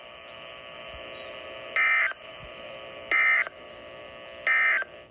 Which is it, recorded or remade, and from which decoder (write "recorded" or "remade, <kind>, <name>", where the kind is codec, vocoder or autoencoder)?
recorded